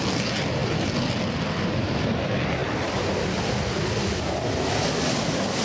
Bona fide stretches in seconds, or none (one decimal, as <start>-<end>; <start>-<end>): 0.0-5.6